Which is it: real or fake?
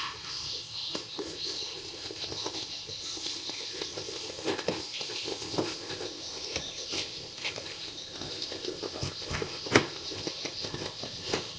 fake